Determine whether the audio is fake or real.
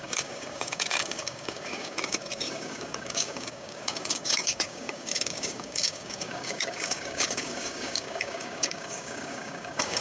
fake